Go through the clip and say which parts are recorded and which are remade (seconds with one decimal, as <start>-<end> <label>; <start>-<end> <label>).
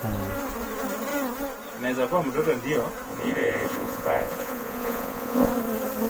0.0-3.1 recorded; 3.1-5.5 remade; 5.5-6.1 recorded